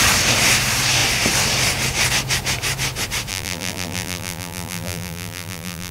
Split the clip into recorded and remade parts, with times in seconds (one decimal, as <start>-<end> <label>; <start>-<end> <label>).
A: 0.0-3.3 recorded; 3.3-5.9 remade